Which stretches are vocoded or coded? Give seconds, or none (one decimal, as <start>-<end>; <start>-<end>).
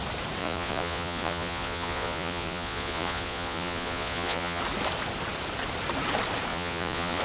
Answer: 0.4-4.6; 6.5-7.2